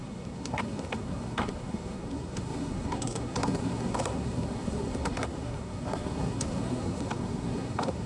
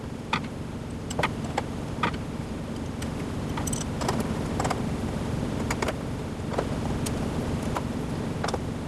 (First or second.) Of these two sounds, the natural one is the second